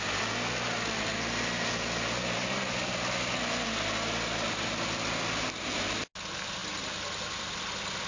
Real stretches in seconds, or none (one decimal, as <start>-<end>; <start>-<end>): 0.0-8.1